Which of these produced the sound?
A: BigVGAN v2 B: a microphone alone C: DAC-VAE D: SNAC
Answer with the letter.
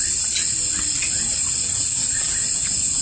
B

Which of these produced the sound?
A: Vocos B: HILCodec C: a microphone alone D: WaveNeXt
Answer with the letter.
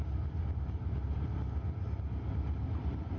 C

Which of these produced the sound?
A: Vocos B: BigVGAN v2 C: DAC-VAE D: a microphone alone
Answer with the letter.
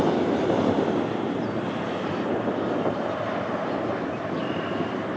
D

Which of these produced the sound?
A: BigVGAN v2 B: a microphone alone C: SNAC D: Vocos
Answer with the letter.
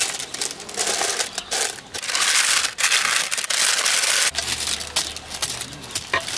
B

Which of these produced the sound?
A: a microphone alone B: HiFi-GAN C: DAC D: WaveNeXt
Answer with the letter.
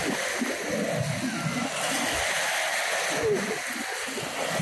A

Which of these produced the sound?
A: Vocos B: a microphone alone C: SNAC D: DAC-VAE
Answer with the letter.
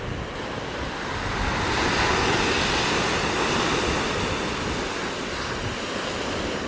B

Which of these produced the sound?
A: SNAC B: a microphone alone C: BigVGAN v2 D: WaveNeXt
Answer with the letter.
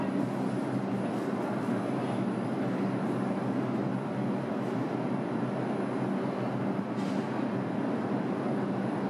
B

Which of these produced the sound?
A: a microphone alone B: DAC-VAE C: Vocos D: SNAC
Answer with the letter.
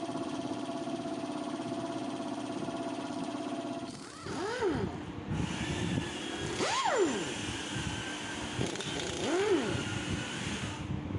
A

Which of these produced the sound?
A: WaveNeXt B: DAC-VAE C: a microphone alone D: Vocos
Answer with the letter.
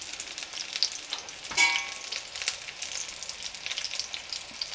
C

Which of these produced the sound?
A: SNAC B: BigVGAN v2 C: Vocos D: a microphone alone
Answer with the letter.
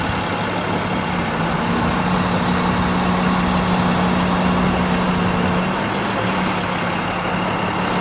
D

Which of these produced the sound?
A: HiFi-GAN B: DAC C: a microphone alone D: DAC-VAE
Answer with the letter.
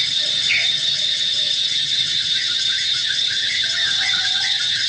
A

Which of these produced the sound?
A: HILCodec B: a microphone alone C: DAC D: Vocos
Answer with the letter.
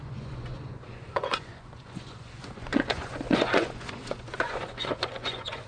D